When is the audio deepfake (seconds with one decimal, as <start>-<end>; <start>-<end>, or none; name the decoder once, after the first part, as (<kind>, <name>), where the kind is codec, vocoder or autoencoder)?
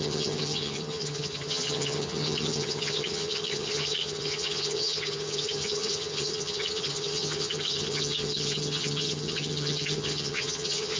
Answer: 0.0-11.0 (vocoder, HiFi-GAN)